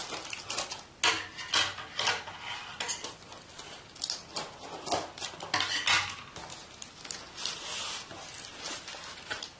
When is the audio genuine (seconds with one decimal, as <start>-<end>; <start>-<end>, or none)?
0.0-9.6